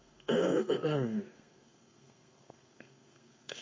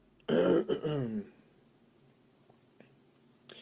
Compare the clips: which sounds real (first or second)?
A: second